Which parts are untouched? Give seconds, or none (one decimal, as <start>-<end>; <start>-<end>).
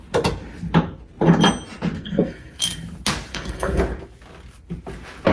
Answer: 0.0-2.0; 2.6-3.3; 3.8-5.3